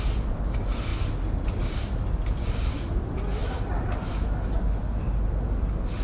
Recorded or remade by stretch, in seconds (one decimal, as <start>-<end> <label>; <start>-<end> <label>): 0.0-6.0 recorded